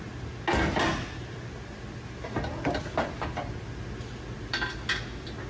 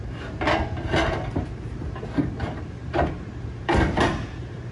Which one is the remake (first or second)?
second